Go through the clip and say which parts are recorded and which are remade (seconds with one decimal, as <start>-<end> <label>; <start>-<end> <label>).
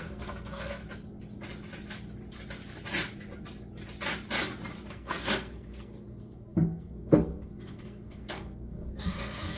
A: 0.0-0.8 remade; 0.8-4.9 recorded; 4.9-9.6 remade